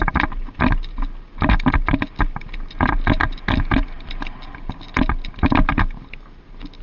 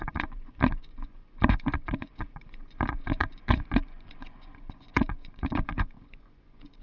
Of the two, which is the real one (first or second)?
first